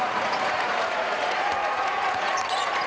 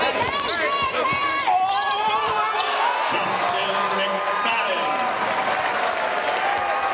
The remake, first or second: first